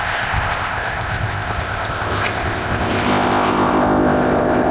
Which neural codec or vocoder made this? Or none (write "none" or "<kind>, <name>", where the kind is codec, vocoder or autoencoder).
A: codec, ZipCodec